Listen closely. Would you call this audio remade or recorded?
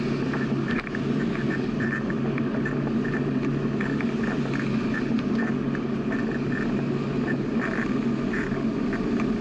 recorded